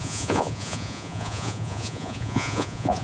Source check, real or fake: fake